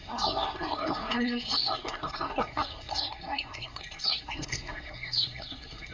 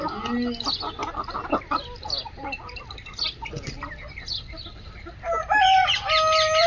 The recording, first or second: second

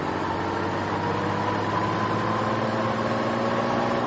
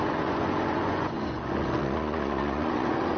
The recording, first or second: first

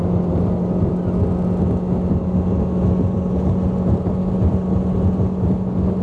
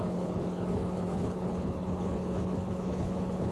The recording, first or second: first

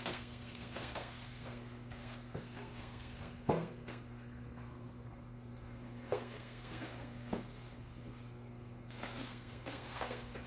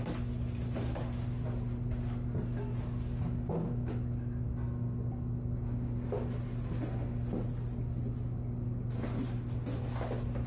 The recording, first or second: second